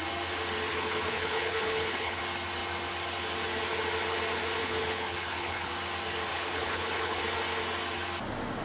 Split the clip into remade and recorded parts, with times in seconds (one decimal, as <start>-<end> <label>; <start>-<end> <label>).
0.0-0.7 recorded; 0.7-2.2 remade; 2.2-4.6 recorded; 4.6-5.7 remade; 5.7-6.3 recorded; 6.3-7.2 remade; 7.2-8.6 recorded